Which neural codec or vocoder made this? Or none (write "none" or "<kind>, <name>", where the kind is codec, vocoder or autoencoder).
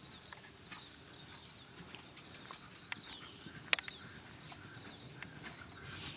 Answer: none